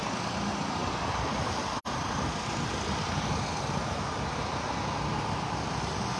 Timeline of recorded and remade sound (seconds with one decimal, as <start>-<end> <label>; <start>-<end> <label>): 0.0-6.2 recorded